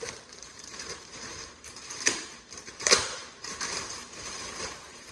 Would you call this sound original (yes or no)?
no